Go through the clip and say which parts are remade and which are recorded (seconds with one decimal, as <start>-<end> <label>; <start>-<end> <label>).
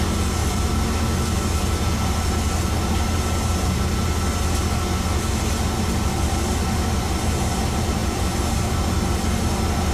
0.0-9.9 recorded